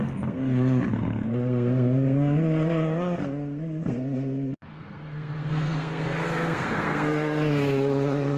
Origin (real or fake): fake